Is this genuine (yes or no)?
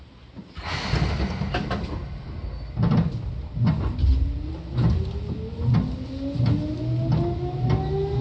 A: yes